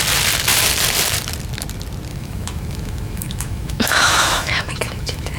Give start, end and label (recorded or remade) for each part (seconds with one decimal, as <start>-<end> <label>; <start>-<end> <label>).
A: 0.0-2.1 recorded; 2.1-5.4 remade